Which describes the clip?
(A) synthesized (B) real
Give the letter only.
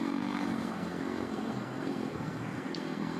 A